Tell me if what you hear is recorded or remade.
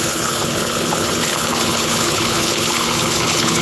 remade